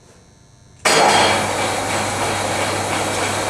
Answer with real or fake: real